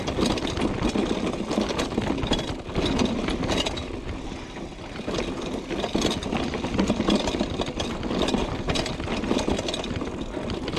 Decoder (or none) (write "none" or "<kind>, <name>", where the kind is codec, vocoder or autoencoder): none